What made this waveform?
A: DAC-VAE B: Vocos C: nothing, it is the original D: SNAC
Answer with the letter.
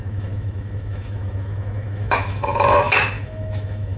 A